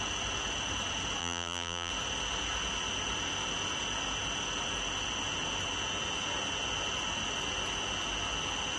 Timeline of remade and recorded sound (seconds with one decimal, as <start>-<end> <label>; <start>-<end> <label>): 0.0-1.2 recorded; 1.2-1.9 remade; 1.9-8.8 recorded